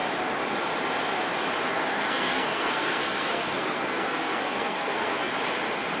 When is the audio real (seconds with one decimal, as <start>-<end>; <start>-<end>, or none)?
0.0-1.7; 5.3-6.0